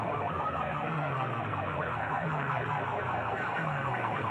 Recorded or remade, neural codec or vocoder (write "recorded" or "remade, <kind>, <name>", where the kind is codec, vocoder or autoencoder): remade, codec, SNAC